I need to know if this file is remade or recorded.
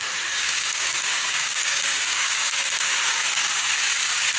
remade